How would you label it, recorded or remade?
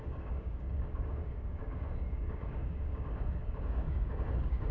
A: remade